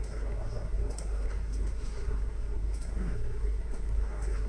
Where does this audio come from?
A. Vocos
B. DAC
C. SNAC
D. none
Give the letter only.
C